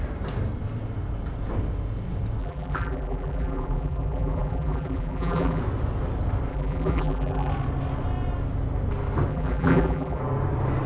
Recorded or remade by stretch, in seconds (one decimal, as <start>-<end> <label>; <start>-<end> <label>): 0.0-2.4 recorded; 2.4-5.6 remade; 5.6-6.5 recorded; 6.5-7.5 remade; 7.5-9.3 recorded; 9.3-10.2 remade; 10.2-10.9 recorded